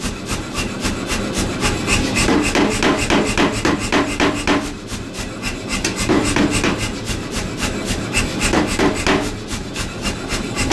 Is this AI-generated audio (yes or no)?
no